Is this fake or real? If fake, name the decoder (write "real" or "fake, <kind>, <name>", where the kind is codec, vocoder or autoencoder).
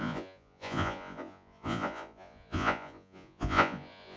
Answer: fake, vocoder, Vocos